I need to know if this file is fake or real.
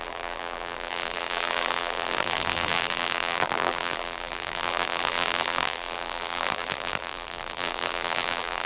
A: fake